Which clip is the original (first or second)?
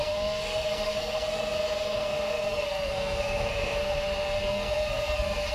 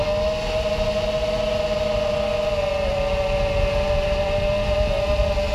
second